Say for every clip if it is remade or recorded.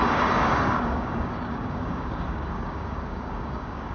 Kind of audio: remade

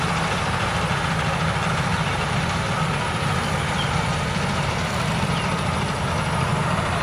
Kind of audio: recorded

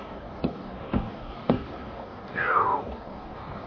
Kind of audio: remade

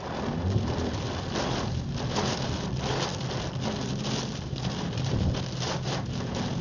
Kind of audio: recorded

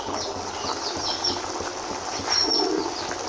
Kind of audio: recorded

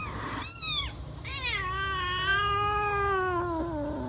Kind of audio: recorded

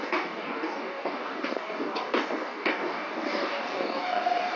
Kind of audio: remade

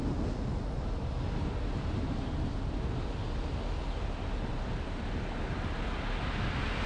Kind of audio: recorded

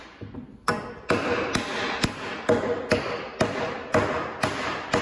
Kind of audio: recorded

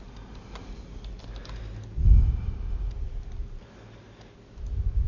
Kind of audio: recorded